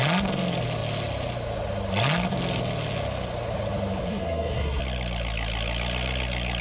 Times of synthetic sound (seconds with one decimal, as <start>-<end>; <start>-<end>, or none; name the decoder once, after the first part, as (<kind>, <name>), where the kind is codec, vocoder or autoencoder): 4.1-4.8 (codec, SNAC)

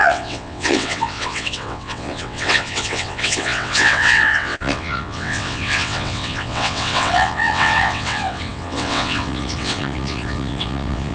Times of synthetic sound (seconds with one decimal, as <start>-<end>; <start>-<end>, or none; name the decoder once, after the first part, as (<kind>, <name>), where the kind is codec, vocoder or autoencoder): 0.0-11.1 (vocoder, WaveNeXt)

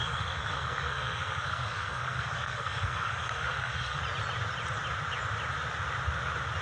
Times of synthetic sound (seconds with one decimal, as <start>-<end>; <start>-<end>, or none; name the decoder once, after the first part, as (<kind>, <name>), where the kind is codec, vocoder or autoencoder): 0.0-4.0 (codec, SNAC)

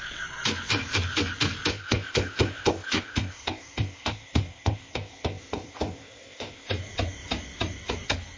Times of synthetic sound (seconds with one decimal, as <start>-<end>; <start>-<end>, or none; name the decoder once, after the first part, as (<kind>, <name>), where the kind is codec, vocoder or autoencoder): 1.7-6.7 (codec, ZipCodec)

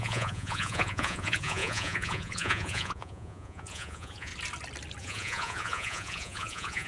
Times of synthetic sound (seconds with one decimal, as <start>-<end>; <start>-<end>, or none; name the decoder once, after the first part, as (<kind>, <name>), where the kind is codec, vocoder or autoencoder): 0.0-4.3 (vocoder, Vocos); 5.0-6.9